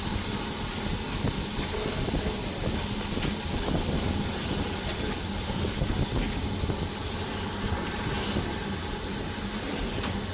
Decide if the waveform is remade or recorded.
recorded